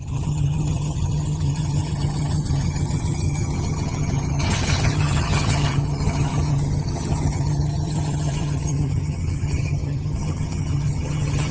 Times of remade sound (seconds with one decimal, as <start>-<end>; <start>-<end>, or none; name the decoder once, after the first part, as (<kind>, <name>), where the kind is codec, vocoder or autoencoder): 0.0-11.5 (vocoder, HiFi-GAN)